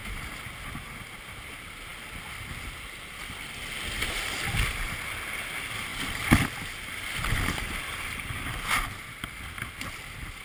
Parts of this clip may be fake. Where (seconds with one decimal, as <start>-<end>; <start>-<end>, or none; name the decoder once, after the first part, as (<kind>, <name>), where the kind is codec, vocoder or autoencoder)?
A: none

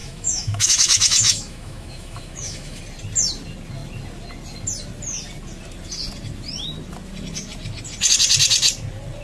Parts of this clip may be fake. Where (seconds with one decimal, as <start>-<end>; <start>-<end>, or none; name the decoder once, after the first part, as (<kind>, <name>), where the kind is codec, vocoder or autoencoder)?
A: 0.0-2.8 (autoencoder, DAC-VAE)

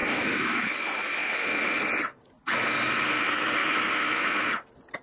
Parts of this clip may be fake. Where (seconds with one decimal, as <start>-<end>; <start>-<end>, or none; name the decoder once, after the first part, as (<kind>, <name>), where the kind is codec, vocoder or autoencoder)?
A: 0.0-0.7 (autoencoder, DAC-VAE); 3.6-4.3